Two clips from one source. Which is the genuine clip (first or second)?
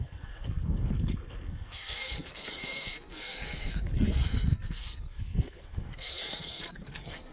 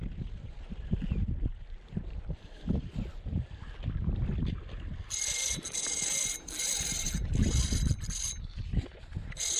second